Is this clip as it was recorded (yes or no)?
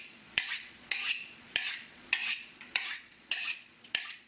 no